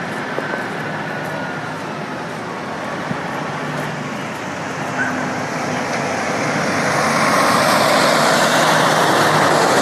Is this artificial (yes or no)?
no